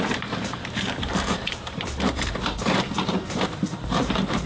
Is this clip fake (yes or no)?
yes